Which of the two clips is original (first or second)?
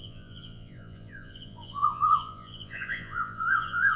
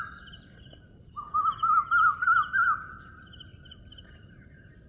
second